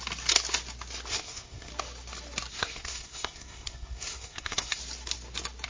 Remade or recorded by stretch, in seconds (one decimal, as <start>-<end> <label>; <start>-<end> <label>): 0.0-1.1 recorded; 1.1-1.7 remade; 1.7-2.5 recorded; 2.5-4.8 remade; 4.8-5.7 recorded